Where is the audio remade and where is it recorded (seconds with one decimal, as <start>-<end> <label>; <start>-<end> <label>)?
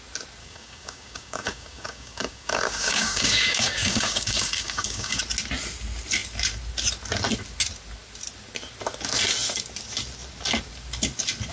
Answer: 0.0-0.4 recorded; 0.4-5.2 remade; 5.2-11.5 recorded